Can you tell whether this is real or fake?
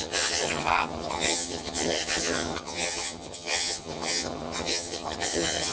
fake